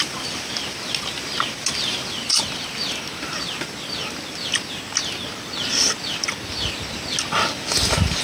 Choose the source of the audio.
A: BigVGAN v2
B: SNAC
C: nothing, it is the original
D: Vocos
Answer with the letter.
C